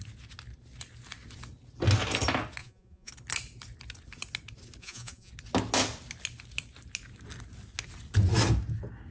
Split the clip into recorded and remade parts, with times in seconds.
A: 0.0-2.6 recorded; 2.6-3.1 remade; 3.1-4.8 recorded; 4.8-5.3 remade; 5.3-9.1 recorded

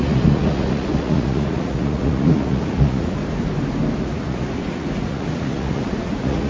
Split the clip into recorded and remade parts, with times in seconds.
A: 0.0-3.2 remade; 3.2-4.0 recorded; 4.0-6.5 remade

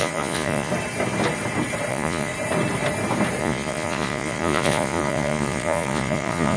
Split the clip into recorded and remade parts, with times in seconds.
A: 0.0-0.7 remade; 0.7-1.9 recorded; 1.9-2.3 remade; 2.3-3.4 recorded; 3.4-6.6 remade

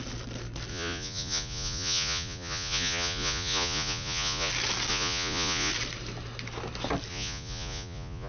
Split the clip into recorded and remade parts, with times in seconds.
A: 0.0-0.7 recorded; 0.7-4.5 remade; 4.5-4.9 recorded; 4.9-5.7 remade; 5.7-7.1 recorded; 7.1-8.3 remade

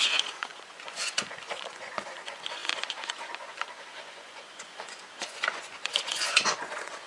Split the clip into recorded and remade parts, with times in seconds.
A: 0.0-7.1 remade